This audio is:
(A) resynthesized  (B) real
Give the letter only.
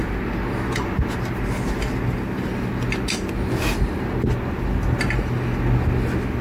B